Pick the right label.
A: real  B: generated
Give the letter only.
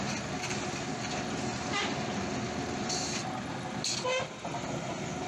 A